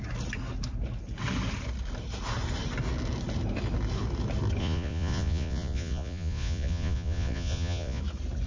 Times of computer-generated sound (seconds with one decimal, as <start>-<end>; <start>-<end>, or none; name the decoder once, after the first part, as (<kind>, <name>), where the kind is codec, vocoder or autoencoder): 4.6-8.0 (vocoder, Vocos)